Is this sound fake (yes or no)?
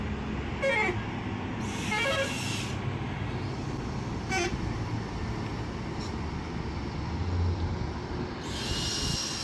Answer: no